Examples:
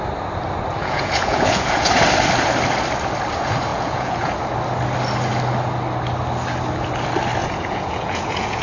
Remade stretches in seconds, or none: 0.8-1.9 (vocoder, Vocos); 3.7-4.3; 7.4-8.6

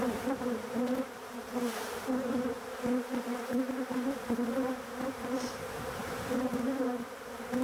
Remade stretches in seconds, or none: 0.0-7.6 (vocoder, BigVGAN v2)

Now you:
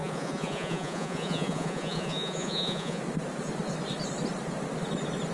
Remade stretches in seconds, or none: 0.0-3.0 (vocoder, Vocos)

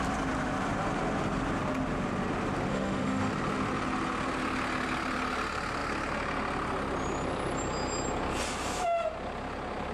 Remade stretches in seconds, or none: 2.7-3.3 (autoencoder, DAC-VAE)